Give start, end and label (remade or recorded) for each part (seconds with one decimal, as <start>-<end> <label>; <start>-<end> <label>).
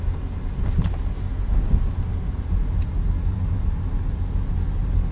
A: 0.0-5.1 recorded